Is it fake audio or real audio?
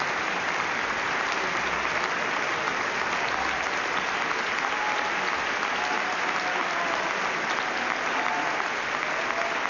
real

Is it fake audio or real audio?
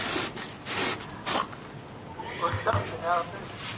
real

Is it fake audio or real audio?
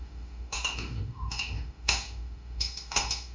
fake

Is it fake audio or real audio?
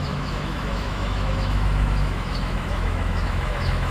fake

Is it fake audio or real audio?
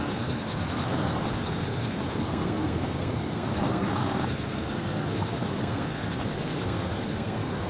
fake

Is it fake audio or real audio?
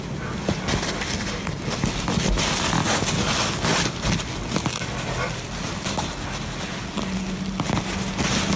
real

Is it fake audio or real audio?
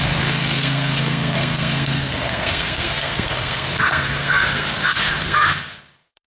fake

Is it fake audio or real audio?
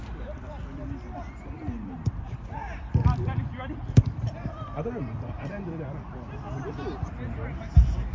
fake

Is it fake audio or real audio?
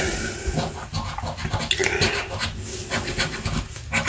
real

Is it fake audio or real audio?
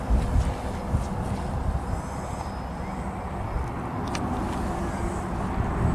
real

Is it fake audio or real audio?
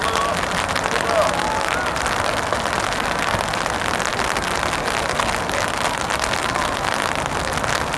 real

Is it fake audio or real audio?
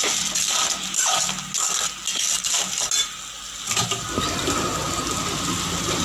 real